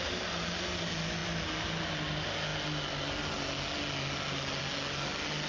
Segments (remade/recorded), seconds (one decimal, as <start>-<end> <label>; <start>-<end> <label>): 0.0-5.5 recorded